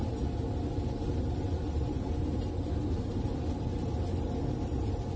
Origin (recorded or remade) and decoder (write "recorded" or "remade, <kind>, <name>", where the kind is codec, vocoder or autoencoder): recorded